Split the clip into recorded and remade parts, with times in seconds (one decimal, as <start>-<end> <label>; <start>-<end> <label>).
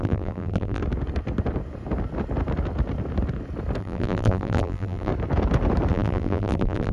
0.0-0.8 remade; 0.8-3.8 recorded; 3.8-5.1 remade; 5.1-5.9 recorded; 5.9-6.9 remade